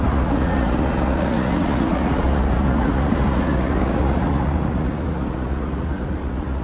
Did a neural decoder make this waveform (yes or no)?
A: yes